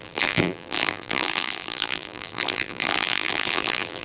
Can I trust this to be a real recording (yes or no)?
no